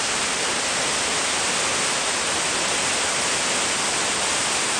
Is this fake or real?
real